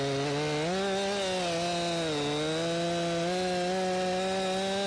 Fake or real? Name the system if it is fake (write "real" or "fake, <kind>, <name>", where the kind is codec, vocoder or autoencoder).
real